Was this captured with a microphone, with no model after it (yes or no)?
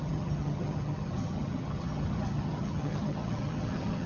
no